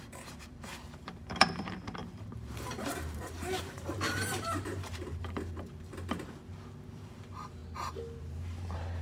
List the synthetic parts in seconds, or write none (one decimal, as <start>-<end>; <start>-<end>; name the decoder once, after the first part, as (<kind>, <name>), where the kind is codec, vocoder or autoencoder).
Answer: 0.0-7.6 (vocoder, BigVGAN v2); 8.2-9.0